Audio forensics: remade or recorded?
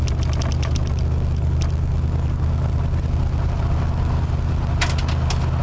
recorded